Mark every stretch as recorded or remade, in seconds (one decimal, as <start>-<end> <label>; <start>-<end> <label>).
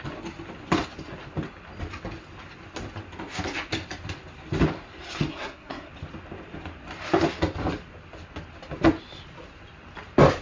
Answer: 0.0-5.3 recorded; 5.3-5.9 remade; 5.9-10.4 recorded